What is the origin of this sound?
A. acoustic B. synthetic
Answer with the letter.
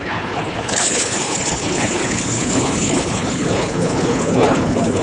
B